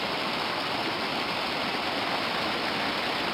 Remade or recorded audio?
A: recorded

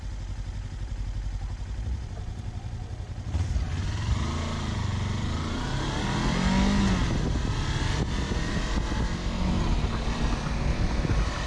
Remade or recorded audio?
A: recorded